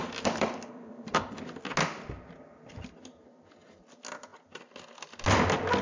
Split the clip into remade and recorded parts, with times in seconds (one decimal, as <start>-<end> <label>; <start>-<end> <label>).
0.0-1.4 remade; 1.4-5.8 recorded